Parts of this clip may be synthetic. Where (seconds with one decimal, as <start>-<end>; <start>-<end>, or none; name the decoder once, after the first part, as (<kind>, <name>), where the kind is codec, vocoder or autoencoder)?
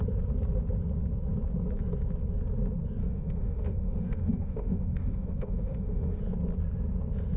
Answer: 3.0-6.2 (autoencoder, DAC-VAE)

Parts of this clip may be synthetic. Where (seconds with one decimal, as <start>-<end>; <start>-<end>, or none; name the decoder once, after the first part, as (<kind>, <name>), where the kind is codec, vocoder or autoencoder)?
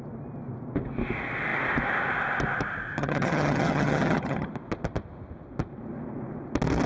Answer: 3.0-4.5 (vocoder, HiFi-GAN)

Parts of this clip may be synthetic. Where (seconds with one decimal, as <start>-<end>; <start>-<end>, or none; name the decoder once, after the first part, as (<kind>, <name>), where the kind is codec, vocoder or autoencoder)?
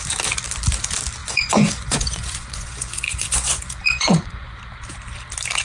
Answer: 1.2-4.6 (vocoder, Vocos)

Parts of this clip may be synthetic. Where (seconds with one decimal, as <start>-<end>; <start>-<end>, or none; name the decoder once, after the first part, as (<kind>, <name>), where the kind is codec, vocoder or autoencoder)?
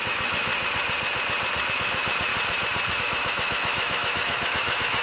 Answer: 0.0-0.5 (autoencoder, DAC-VAE); 1.7-2.3; 3.0-5.0